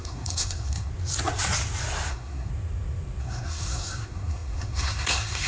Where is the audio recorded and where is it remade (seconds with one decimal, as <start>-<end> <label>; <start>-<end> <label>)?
0.0-0.9 remade; 0.9-2.1 recorded; 2.1-2.5 remade; 2.5-3.2 recorded; 3.2-5.5 remade